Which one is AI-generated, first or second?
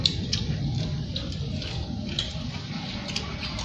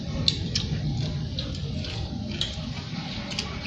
first